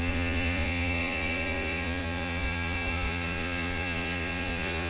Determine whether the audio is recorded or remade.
remade